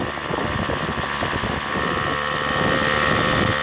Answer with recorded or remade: remade